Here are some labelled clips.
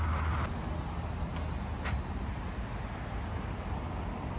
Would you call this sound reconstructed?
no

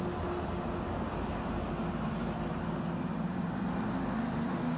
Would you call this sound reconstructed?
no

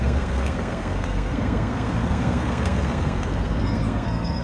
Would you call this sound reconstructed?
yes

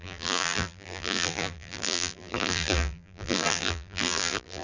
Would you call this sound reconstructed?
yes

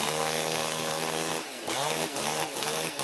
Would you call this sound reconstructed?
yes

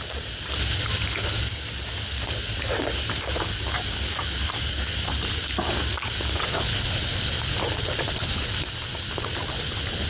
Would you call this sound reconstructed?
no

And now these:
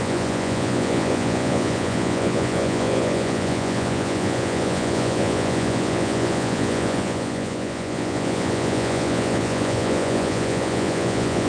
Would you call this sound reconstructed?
yes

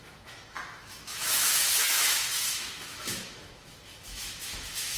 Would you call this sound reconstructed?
yes